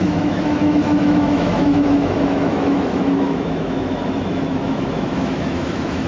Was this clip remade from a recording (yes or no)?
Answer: yes